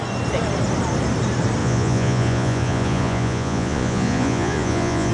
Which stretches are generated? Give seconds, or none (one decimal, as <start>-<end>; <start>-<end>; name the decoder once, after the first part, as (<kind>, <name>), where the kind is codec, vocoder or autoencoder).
1.6-5.1 (vocoder, Vocos)